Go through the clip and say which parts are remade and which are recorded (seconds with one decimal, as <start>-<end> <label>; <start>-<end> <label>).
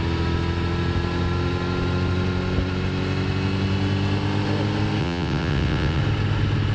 0.0-5.0 recorded; 5.0-6.0 remade; 6.0-6.7 recorded